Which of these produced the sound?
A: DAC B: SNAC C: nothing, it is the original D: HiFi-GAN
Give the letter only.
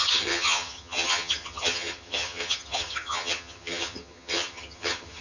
D